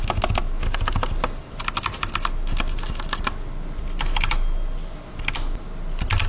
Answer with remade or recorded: recorded